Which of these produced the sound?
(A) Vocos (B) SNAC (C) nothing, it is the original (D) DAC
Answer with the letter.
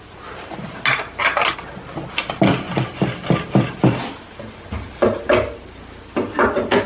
C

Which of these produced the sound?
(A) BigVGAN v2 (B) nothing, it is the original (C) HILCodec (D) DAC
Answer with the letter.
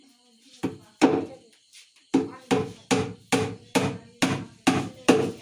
B